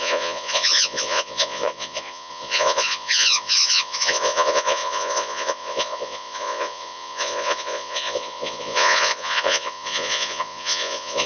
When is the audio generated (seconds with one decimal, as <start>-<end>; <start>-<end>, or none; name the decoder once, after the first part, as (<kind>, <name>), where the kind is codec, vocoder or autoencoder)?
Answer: 0.0-11.3 (vocoder, Vocos)